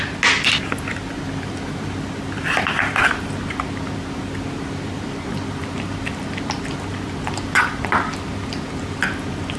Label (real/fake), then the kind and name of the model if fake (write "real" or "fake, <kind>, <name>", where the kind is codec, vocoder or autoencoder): real